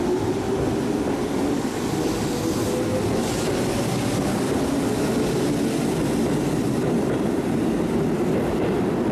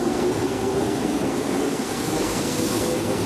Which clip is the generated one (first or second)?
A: second